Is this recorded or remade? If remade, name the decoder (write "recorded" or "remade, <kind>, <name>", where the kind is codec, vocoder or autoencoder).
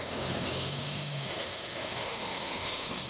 remade, autoencoder, DAC-VAE